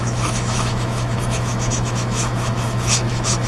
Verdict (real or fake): fake